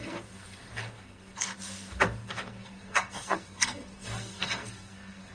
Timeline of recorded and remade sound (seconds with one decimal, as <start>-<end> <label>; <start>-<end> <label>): 0.0-5.3 remade